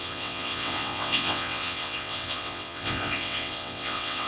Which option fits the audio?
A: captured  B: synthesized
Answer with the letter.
B